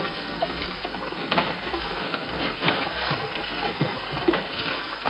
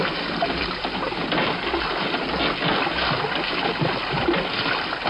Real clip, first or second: second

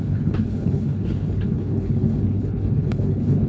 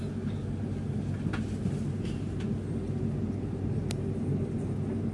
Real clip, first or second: second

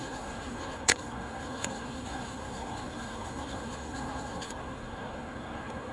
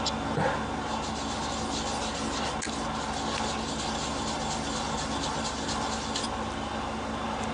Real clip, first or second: second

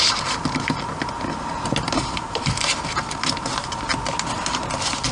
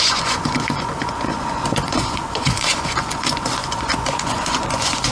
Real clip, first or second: first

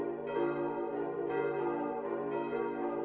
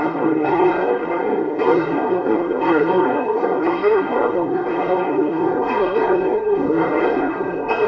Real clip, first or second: first